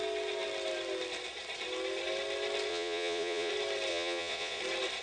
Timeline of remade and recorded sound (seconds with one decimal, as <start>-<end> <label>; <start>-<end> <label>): 0.0-2.7 recorded; 2.7-3.5 remade; 3.5-3.9 recorded; 3.9-4.6 remade; 4.6-5.0 recorded